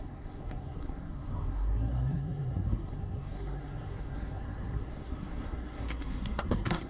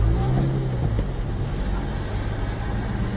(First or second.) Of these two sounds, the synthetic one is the first